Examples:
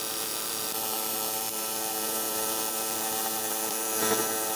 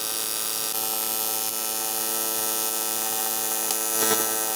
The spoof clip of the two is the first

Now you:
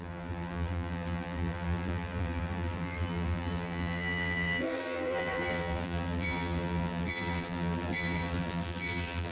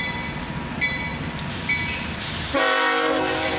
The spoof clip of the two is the first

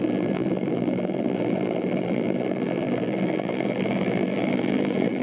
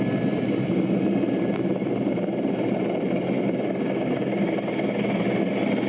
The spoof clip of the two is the first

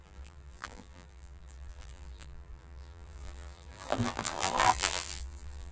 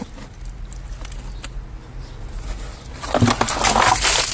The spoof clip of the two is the first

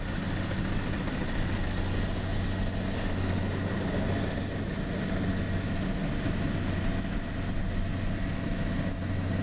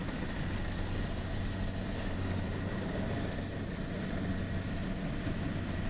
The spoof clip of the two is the second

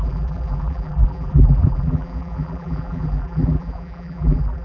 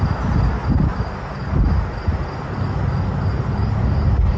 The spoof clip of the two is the first